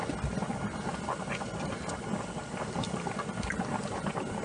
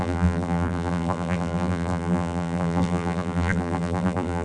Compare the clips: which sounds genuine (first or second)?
first